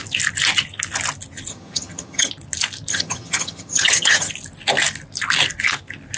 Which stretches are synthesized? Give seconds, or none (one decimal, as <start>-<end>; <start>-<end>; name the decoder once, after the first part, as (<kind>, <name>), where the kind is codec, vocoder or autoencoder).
1.5-2.3 (vocoder, HiFi-GAN); 2.9-4.3